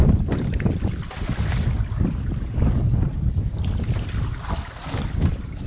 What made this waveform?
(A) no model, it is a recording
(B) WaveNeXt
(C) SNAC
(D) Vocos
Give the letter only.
A